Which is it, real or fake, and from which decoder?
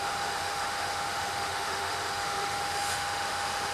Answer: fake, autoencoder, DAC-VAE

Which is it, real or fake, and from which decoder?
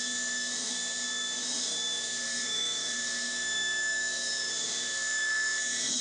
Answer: fake, autoencoder, DAC-VAE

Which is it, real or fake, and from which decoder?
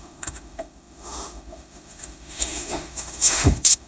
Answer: fake, autoencoder, DAC-VAE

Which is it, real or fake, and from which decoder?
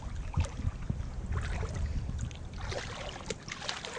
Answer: real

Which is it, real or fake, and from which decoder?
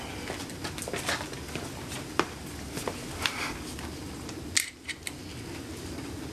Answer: real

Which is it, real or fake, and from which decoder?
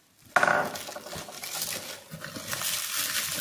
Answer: real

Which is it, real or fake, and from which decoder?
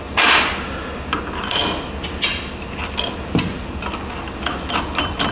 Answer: real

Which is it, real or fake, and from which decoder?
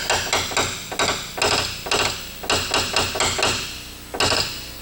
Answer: real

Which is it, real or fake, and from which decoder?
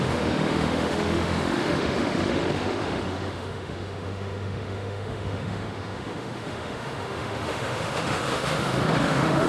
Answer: fake, autoencoder, DAC-VAE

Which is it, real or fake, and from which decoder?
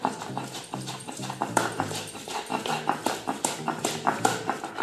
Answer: real